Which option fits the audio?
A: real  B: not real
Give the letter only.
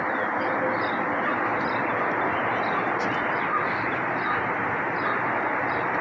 A